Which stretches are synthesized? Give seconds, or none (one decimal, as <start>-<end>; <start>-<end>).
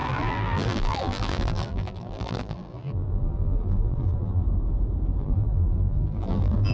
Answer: 0.0-4.4; 5.2-6.7